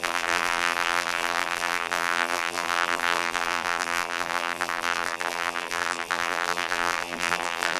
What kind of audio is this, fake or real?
fake